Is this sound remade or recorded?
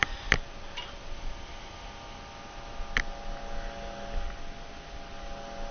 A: recorded